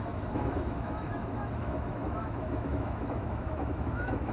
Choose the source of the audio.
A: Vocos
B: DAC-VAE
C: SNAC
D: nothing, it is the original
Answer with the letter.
B